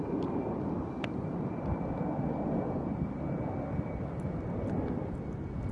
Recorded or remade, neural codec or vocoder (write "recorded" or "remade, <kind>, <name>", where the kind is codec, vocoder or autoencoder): recorded